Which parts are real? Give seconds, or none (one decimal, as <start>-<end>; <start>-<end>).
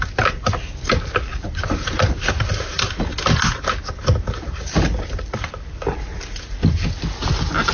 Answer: 0.0-1.3; 2.9-7.7